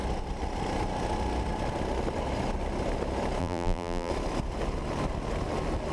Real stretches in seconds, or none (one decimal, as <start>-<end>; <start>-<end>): 0.0-3.4; 4.1-5.9